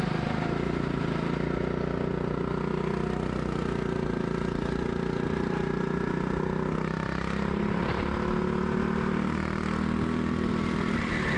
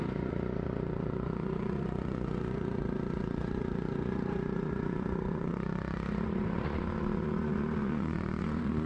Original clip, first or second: first